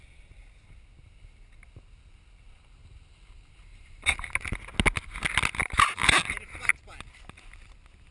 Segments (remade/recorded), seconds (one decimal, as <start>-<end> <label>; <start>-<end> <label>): 0.0-3.7 recorded; 3.7-4.3 remade; 4.3-5.6 recorded; 5.6-6.9 remade; 6.9-8.1 recorded